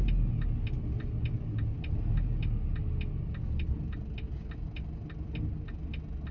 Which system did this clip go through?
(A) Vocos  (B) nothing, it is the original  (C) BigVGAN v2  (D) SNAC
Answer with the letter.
B